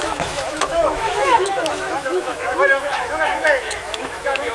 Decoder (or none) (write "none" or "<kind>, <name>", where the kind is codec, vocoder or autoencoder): autoencoder, DAC-VAE